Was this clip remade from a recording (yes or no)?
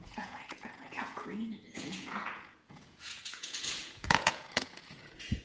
yes